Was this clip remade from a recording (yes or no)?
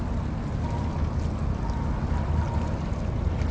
no